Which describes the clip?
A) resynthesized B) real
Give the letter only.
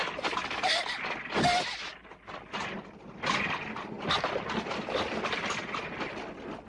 B